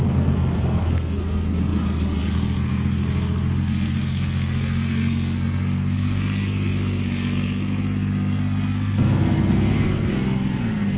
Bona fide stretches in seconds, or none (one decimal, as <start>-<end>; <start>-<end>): 3.0-3.6